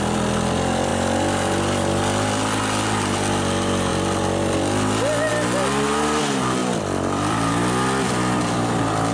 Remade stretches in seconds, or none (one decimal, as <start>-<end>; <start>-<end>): 6.6-8.6

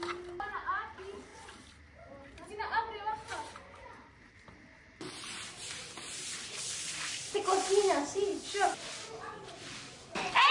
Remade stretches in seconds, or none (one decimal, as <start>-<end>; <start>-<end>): 3.2-5.9

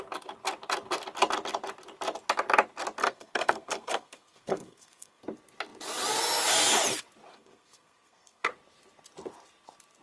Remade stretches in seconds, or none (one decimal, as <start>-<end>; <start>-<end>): 3.0-5.2; 7.3-8.5

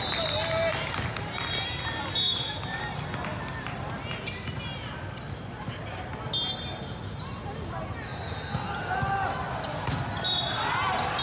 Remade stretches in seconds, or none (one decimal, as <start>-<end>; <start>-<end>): 2.2-2.8